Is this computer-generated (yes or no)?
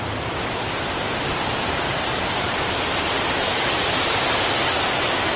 no